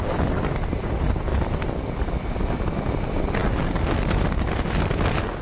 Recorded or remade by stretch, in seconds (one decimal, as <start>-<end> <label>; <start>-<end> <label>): 0.0-5.4 recorded